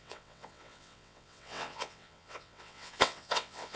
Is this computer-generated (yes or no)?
yes